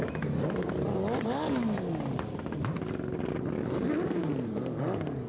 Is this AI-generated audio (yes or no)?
no